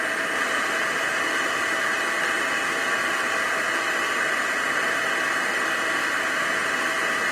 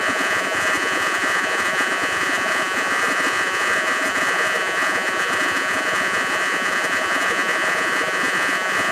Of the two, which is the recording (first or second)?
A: first